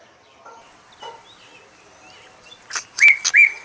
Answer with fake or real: real